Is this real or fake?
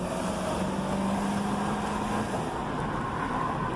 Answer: real